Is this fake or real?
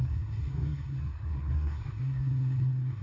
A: fake